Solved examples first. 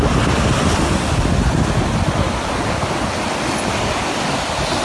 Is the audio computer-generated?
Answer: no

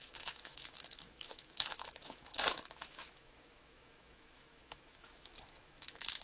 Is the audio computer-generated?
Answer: yes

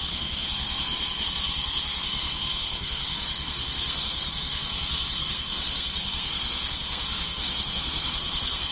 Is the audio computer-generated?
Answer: yes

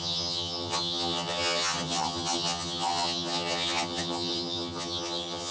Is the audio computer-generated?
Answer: yes